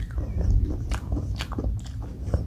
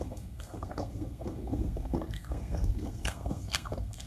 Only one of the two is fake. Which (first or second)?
second